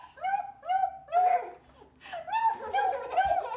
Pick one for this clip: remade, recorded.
recorded